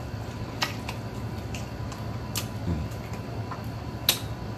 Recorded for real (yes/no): yes